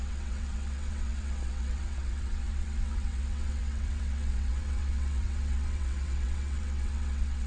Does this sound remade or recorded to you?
remade